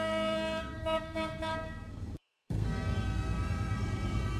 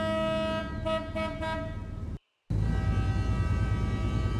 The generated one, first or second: first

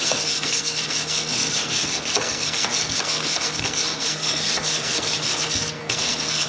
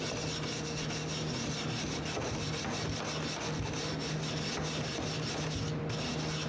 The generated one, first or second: first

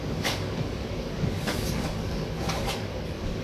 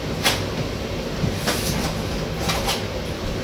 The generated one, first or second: first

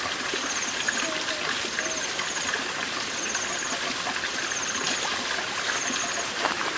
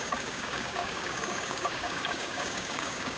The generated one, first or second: second